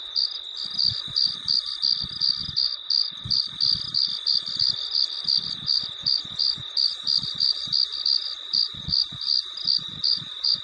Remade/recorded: recorded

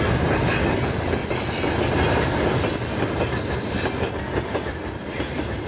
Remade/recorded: recorded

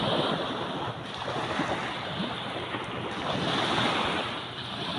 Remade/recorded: recorded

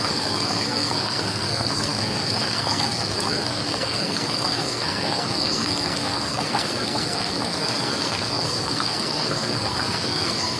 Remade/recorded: remade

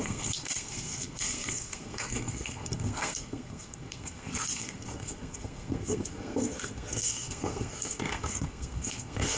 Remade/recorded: remade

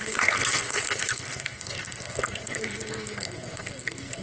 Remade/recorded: remade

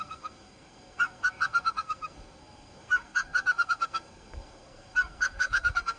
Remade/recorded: remade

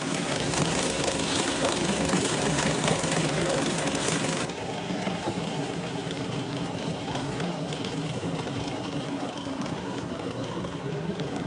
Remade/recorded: remade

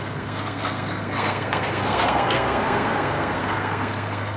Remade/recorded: remade